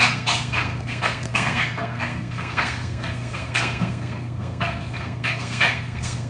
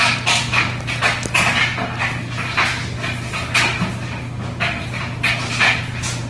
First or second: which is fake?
first